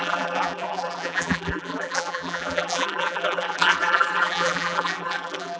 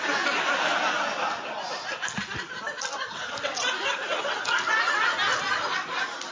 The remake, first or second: first